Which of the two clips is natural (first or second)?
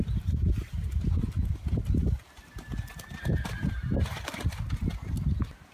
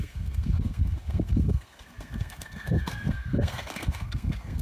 first